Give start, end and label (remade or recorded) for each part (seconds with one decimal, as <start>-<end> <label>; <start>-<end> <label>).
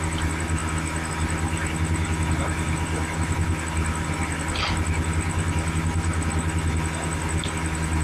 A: 0.0-8.0 recorded